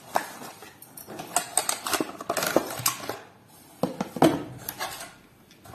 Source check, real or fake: real